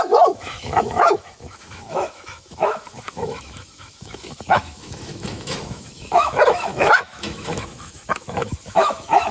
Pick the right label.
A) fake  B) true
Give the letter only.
A